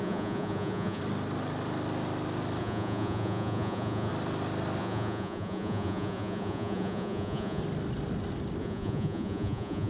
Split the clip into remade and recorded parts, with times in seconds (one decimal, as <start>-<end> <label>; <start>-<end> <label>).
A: 0.0-1.0 remade; 1.0-2.6 recorded; 2.6-4.1 remade; 4.1-4.8 recorded; 4.8-7.6 remade; 7.6-8.6 recorded; 8.6-9.9 remade